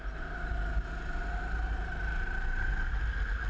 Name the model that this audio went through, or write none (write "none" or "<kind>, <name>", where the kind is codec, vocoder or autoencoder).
none